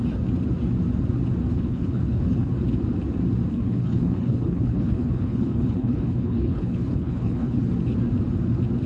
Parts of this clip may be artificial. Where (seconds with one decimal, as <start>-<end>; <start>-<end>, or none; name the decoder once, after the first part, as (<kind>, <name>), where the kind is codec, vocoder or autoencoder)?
1.5-2.5 (codec, HILCodec); 3.5-7.6